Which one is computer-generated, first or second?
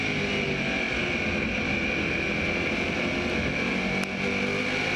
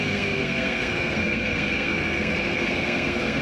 second